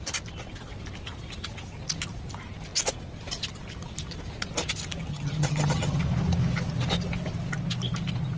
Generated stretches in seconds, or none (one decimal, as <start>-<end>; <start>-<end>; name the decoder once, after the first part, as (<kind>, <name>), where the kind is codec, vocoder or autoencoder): 5.1-6.0 (vocoder, HiFi-GAN)